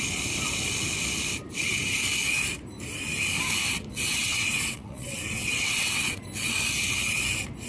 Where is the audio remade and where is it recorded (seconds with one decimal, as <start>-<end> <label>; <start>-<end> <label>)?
0.0-3.9 recorded; 3.9-6.2 remade; 6.2-7.7 recorded